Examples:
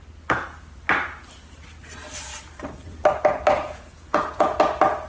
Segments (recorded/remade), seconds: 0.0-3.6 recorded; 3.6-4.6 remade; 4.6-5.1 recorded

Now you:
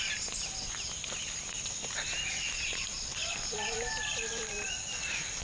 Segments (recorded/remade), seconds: 0.0-5.4 recorded

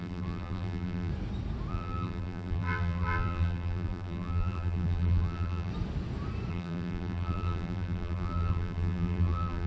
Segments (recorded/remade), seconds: 0.0-1.1 remade; 1.1-1.7 recorded; 1.7-5.7 remade; 5.7-6.5 recorded; 6.5-9.7 remade

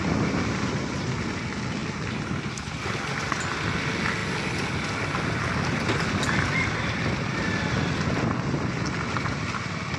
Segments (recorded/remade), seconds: 0.0-10.0 recorded

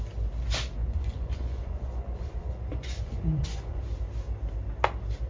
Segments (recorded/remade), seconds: 0.0-0.8 recorded; 0.8-3.8 remade; 3.8-5.3 recorded